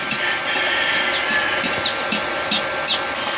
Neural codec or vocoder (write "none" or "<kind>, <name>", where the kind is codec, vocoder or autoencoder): none